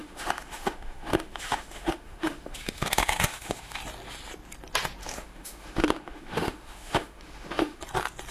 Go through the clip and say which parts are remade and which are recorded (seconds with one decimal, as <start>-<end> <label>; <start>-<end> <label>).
0.0-3.8 remade; 3.8-5.0 recorded; 5.0-7.8 remade; 7.8-8.3 recorded